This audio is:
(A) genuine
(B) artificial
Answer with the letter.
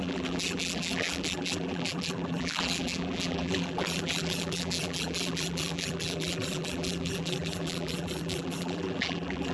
B